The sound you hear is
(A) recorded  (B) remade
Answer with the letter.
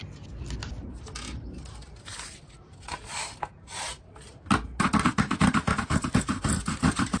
A